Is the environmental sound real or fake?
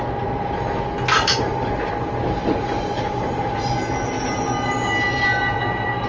real